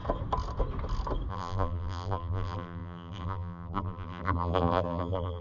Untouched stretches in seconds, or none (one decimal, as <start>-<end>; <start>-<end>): 0.0-1.3